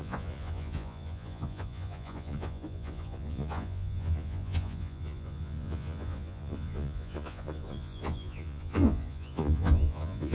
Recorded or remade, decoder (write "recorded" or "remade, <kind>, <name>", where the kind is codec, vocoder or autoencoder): remade, vocoder, Vocos